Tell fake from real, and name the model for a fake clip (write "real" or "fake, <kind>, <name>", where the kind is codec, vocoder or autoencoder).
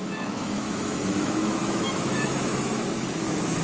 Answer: fake, autoencoder, DAC-VAE